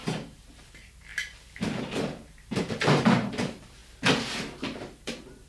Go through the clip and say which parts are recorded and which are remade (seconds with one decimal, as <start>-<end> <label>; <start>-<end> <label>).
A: 0.0-3.8 remade; 3.8-4.6 recorded; 4.6-5.5 remade

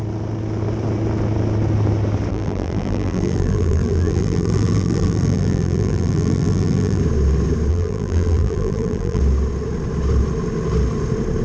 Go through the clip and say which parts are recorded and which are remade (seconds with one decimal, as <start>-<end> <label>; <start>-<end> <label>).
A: 0.0-2.3 recorded; 2.3-7.0 remade; 7.0-7.7 recorded; 7.7-9.2 remade; 9.2-11.4 recorded

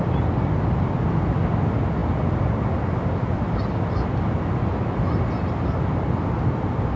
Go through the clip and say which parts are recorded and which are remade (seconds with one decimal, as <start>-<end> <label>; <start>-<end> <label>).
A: 0.0-2.0 recorded; 2.0-2.6 remade; 2.6-7.0 recorded

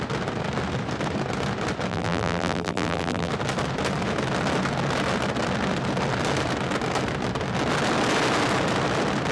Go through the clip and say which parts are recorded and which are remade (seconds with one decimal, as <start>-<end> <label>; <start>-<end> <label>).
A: 0.0-1.9 recorded; 1.9-3.3 remade; 3.3-9.3 recorded

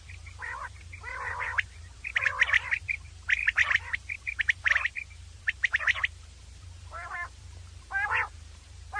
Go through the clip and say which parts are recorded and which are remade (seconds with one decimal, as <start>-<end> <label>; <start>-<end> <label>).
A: 0.0-9.0 remade

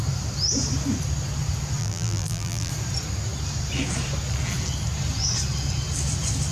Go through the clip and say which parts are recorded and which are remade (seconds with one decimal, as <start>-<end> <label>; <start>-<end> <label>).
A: 0.0-1.8 recorded; 1.8-2.7 remade; 2.7-6.5 recorded

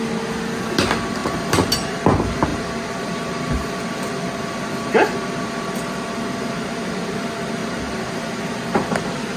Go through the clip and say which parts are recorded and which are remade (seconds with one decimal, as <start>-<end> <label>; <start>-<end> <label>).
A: 0.0-1.2 recorded; 1.2-1.9 remade; 1.9-2.5 recorded; 2.5-3.7 remade; 3.7-7.6 recorded; 7.6-8.2 remade; 8.2-9.4 recorded

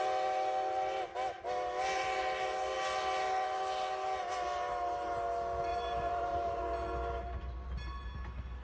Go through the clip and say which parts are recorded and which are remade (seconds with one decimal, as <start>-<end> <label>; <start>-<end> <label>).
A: 0.0-5.7 recorded; 5.7-6.6 remade; 6.6-8.6 recorded